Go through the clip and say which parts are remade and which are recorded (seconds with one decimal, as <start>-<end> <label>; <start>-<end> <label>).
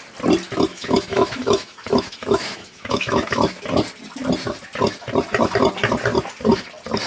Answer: 0.0-0.7 recorded; 0.7-3.6 remade; 3.6-7.1 recorded